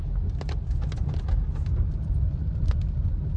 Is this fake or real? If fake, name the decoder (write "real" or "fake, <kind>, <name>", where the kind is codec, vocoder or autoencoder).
real